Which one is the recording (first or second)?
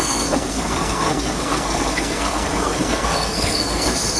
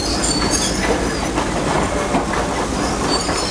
second